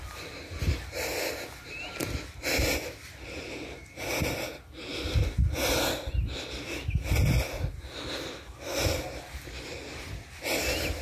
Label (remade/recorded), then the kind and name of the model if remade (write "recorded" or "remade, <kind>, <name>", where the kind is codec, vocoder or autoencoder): recorded